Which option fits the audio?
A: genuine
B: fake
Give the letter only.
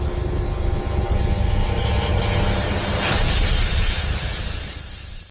A